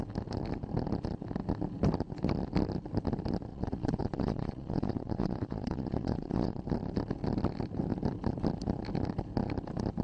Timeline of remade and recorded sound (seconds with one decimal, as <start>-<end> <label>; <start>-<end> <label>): 0.0-3.5 recorded; 3.5-6.6 remade; 6.6-10.0 recorded

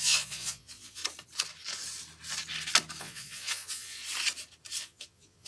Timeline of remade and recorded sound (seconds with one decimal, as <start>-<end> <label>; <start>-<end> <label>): 0.0-1.0 remade; 1.0-3.0 recorded; 3.0-4.0 remade; 4.0-4.8 recorded; 4.8-5.5 remade

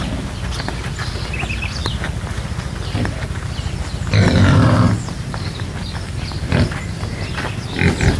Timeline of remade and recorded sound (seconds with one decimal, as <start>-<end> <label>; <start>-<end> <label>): 0.0-8.2 recorded

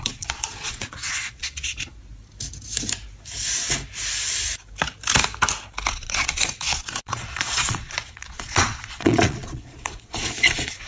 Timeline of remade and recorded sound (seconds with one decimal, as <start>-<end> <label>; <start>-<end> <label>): 0.0-2.0 remade; 2.0-5.9 recorded; 5.9-10.9 remade

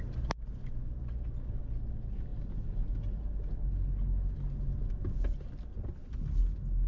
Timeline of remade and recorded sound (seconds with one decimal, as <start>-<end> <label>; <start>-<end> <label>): 0.0-6.9 recorded